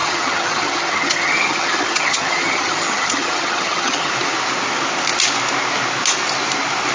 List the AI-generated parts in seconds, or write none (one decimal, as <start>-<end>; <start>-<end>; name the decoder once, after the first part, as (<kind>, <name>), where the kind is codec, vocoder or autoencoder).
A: 0.0-4.1 (vocoder, HiFi-GAN)